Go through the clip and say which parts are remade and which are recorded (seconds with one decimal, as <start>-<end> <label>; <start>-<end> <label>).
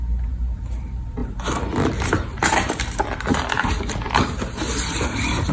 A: 0.0-1.2 recorded; 1.2-4.2 remade; 4.2-5.5 recorded